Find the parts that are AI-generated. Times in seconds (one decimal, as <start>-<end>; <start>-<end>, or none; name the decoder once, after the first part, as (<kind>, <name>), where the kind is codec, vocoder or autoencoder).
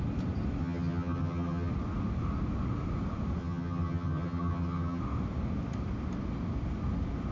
0.6-1.7 (vocoder, HiFi-GAN); 3.4-5.0